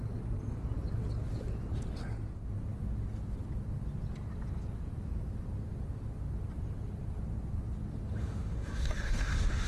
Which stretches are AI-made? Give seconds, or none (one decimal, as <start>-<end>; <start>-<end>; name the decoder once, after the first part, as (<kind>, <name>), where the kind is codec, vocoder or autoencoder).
8.2-9.7 (autoencoder, DAC-VAE)